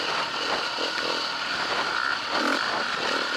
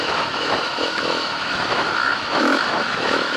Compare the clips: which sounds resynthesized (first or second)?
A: second